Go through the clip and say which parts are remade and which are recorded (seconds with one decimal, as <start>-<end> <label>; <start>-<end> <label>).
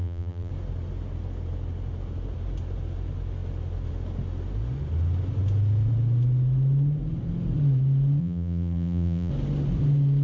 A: 0.0-0.5 remade; 0.5-8.2 recorded; 8.2-9.3 remade; 9.3-10.2 recorded